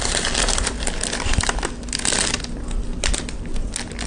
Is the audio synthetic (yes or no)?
no